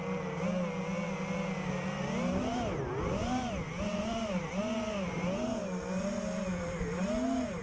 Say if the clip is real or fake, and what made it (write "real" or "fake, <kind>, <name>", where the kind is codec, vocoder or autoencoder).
real